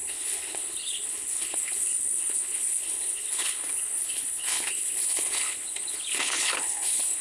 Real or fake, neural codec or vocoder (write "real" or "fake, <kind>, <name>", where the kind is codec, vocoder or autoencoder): fake, codec, HILCodec